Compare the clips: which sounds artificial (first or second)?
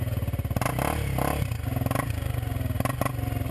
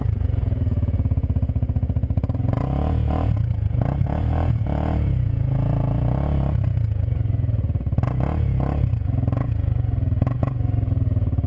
second